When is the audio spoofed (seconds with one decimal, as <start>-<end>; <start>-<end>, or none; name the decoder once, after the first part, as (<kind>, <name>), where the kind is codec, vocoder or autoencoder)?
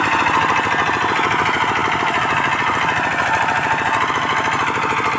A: 1.8-4.1 (vocoder, BigVGAN v2)